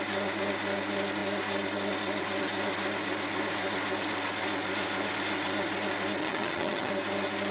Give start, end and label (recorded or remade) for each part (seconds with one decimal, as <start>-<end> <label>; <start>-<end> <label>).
0.0-6.2 recorded; 6.2-6.9 remade; 6.9-7.5 recorded